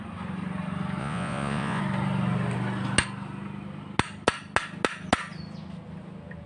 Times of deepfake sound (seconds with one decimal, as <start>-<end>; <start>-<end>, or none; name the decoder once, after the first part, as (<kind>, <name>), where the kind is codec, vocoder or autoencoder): 1.0-1.8 (vocoder, Vocos)